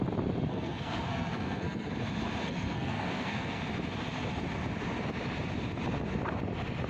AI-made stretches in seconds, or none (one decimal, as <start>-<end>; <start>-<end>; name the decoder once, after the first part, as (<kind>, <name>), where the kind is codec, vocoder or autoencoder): 0.5-1.9 (codec, SNAC); 2.4-3.6